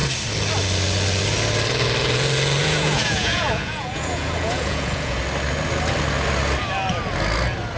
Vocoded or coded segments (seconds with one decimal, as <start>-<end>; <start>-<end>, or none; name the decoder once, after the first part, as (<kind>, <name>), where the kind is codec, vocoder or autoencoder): 2.6-5.2 (vocoder, Vocos)